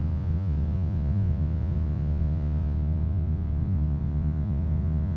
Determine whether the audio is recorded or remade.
remade